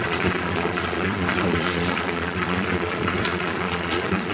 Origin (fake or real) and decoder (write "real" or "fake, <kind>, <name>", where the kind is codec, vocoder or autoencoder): fake, vocoder, Vocos